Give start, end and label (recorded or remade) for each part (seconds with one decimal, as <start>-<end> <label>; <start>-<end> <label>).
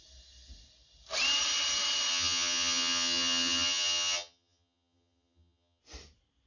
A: 0.0-2.1 recorded; 2.1-5.8 remade; 5.8-6.5 recorded